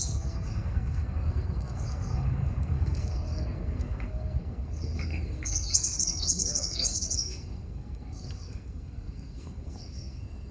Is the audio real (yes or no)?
no